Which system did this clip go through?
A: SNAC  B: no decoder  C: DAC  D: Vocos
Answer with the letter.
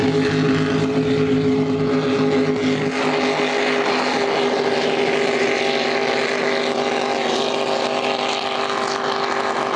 B